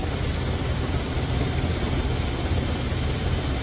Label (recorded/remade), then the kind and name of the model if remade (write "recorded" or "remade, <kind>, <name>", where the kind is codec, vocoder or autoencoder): recorded